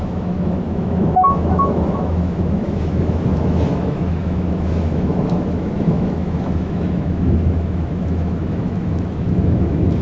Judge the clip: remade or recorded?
remade